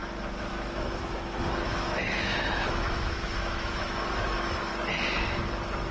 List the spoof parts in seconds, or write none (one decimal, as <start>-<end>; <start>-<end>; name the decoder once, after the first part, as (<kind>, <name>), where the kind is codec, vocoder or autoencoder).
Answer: 0.0-4.7 (autoencoder, DAC-VAE)